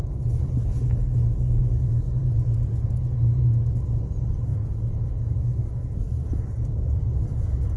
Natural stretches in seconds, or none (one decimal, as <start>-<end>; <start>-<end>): 0.0-1.6; 2.7-4.5; 7.0-7.8